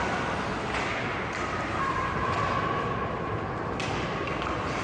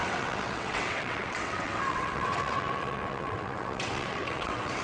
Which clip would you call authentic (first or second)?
first